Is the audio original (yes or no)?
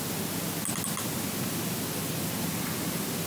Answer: yes